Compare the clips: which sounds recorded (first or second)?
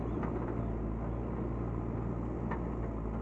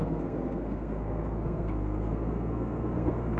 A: first